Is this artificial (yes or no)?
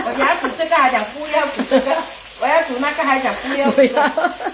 no